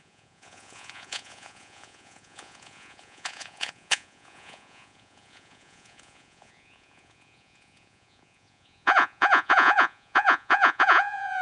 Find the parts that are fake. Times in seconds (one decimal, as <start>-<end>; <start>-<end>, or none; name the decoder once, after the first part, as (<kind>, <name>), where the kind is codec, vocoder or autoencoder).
0.0-11.4 (vocoder, Vocos)